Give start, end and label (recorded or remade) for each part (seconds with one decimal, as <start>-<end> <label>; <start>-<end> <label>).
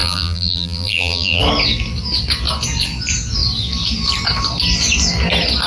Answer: 0.0-1.4 remade; 1.4-5.7 recorded